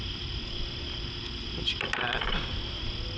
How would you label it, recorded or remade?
recorded